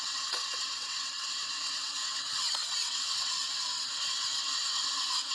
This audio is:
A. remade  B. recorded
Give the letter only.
A